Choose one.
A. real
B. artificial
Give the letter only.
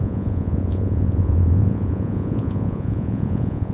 B